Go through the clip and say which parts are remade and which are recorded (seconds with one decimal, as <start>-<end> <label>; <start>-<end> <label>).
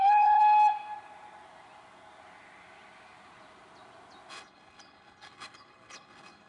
0.0-0.4 remade; 0.4-4.3 recorded; 4.3-6.5 remade